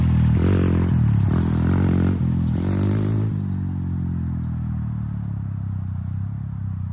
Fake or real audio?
real